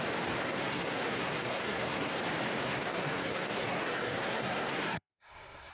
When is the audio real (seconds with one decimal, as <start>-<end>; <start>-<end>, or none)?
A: 0.0-0.4; 2.2-2.6